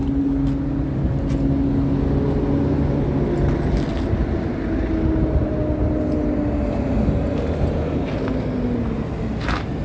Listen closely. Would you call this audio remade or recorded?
recorded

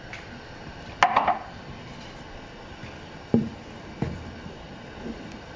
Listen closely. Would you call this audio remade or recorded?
recorded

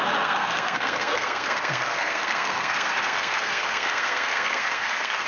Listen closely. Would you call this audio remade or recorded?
remade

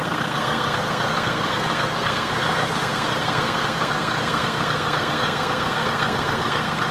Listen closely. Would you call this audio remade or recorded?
remade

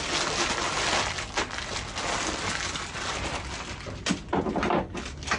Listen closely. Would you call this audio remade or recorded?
recorded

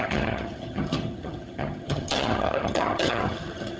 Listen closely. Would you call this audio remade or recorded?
remade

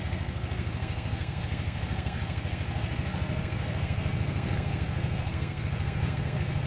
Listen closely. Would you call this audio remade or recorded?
remade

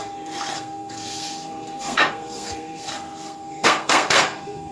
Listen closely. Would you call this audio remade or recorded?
remade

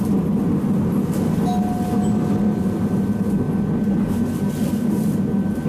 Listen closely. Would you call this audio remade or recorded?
recorded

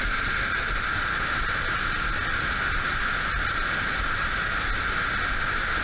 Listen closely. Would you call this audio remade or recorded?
recorded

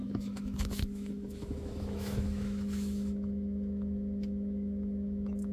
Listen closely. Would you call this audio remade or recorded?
remade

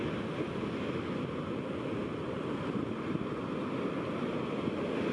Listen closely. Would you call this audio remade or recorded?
recorded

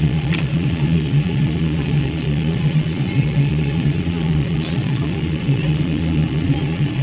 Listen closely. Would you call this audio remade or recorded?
remade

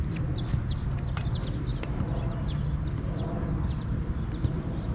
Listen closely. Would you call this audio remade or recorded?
recorded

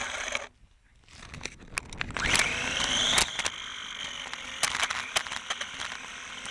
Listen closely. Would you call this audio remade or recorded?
recorded